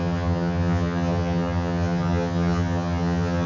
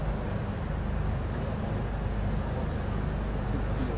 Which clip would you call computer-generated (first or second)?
first